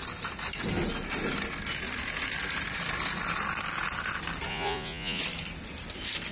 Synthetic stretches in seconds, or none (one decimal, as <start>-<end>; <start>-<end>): 4.5-5.2